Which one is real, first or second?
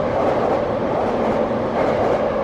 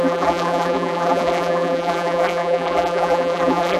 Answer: first